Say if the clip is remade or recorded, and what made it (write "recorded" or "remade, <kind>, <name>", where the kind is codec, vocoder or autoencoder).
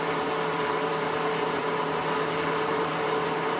remade, vocoder, BigVGAN v2